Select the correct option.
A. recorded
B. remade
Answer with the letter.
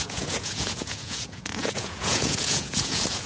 B